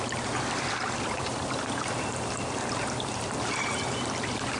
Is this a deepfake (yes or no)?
yes